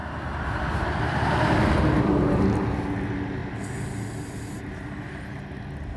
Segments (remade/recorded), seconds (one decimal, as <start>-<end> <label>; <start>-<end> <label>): 0.0-1.4 remade; 1.4-6.0 recorded